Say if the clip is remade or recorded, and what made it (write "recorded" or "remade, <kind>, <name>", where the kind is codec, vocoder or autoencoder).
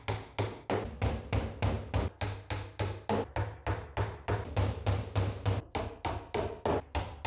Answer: recorded